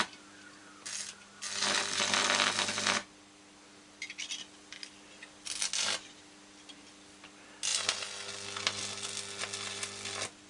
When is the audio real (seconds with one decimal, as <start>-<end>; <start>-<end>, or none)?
0.0-10.5